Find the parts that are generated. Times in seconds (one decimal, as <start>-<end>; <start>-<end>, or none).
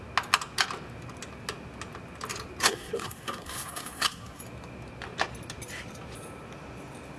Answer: 2.6-4.4